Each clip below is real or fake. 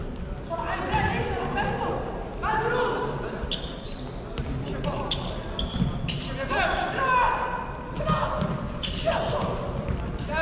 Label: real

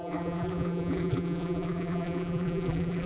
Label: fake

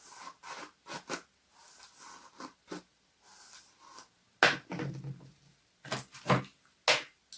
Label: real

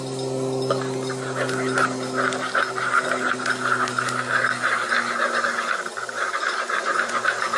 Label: real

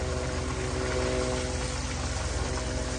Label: real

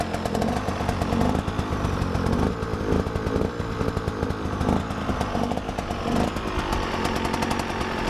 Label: real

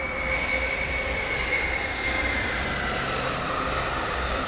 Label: fake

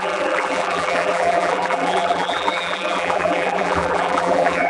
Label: fake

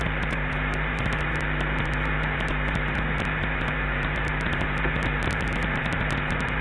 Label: fake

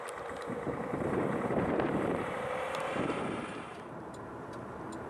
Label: fake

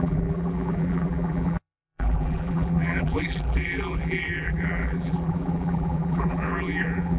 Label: fake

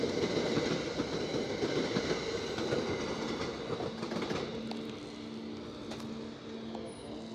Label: real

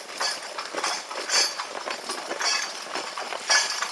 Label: fake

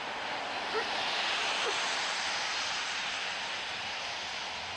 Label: fake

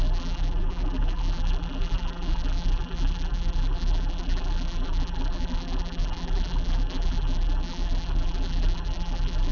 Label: fake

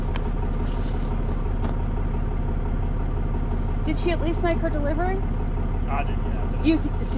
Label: real